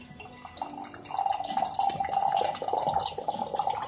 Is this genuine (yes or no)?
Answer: yes